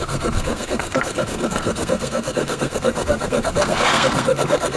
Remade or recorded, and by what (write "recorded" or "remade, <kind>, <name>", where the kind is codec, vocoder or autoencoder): remade, codec, SNAC